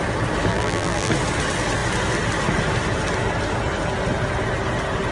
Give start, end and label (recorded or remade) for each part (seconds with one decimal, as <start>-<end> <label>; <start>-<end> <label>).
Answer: 0.0-0.5 recorded; 0.5-1.1 remade; 1.1-5.1 recorded